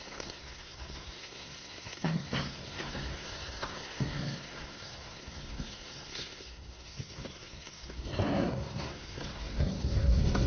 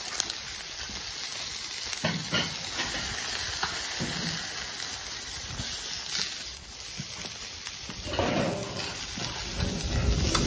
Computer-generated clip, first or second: first